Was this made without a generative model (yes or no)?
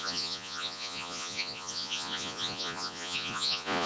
no